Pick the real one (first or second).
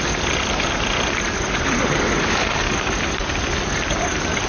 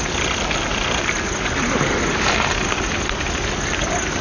second